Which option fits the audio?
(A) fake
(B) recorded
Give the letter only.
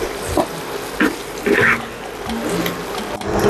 B